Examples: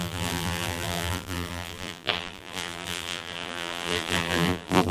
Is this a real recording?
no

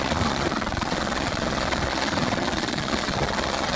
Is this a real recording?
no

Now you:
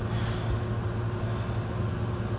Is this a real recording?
yes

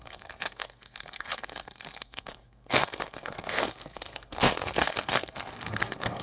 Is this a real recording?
no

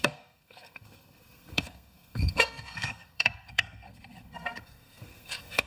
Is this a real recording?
no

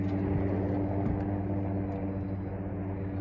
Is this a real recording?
yes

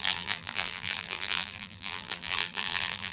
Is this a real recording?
no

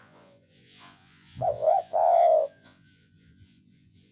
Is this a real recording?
no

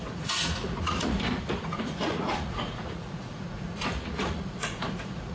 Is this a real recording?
no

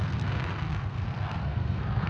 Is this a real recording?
no